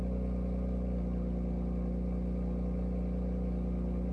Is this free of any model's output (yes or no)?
yes